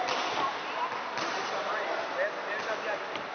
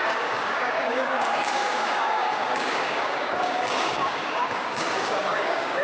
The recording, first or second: first